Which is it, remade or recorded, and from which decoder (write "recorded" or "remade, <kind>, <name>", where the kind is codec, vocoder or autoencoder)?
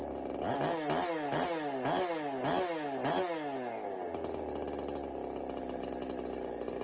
recorded